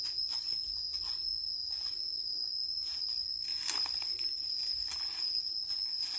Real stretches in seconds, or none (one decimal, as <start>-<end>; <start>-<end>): 0.0-3.5; 4.5-6.2